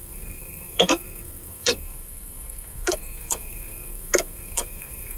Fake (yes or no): yes